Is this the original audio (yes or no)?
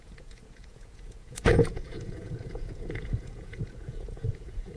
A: no